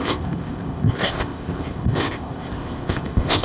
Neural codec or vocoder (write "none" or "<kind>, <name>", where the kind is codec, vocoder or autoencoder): codec, ZipCodec